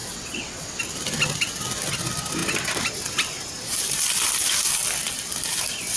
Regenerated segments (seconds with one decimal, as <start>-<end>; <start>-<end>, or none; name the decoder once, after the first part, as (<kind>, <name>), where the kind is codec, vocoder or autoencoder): 0.0-0.8 (vocoder, WaveNeXt)